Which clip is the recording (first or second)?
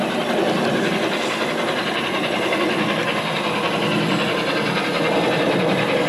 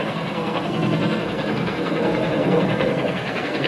first